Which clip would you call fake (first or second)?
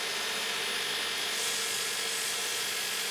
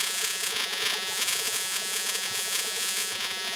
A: second